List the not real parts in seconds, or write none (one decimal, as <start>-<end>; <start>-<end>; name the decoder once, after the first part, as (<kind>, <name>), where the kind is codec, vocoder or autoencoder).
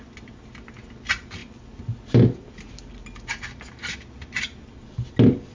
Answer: none